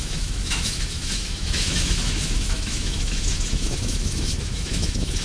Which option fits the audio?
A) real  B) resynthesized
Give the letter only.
B